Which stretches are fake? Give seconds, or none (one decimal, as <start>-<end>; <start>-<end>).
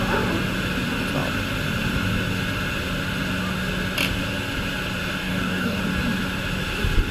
5.2-5.8